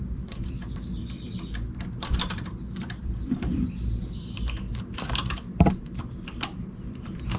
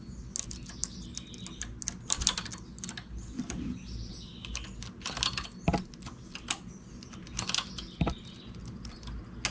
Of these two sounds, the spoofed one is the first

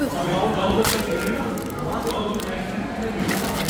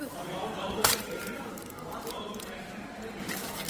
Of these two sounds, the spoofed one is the second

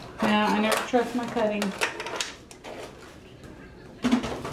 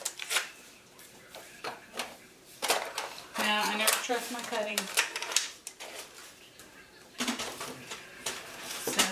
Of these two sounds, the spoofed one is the second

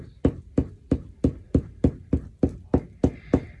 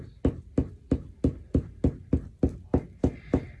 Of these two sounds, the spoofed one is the first